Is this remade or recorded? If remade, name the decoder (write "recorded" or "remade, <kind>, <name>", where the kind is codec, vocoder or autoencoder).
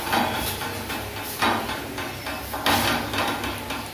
recorded